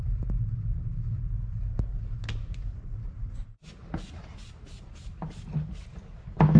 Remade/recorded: recorded